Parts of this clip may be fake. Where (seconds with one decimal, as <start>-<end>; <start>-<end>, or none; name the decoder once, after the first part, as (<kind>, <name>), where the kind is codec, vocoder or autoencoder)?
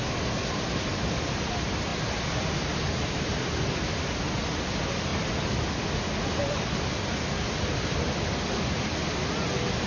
none